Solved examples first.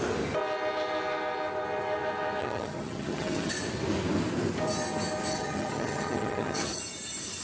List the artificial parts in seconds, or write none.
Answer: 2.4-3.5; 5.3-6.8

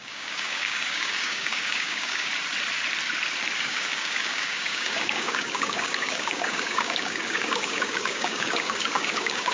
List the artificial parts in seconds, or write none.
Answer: 0.0-2.3; 3.6-9.5

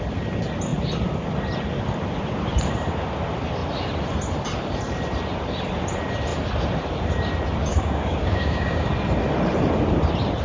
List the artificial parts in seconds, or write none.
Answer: 7.7-8.9

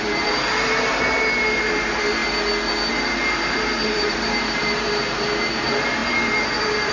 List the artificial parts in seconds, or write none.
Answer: 0.0-2.2; 2.9-6.9

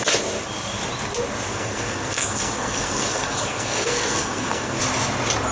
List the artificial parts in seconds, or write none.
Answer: 1.5-4.8

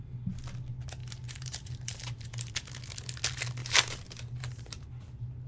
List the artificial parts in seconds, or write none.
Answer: 1.0-2.5; 3.6-4.8

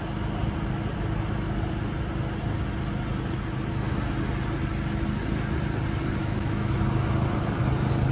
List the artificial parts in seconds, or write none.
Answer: 6.2-6.8